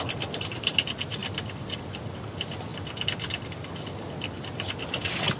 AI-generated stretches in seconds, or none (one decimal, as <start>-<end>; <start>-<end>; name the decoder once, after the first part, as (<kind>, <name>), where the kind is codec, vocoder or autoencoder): 1.2-2.1 (vocoder, BigVGAN v2)